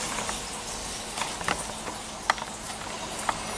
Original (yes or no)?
yes